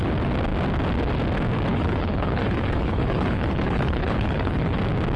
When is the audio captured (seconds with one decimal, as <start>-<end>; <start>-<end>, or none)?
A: 0.0-1.7; 4.8-5.2